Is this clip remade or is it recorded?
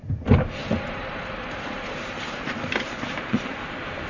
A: remade